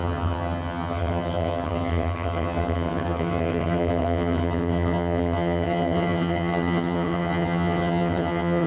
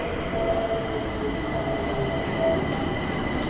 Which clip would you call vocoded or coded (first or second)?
first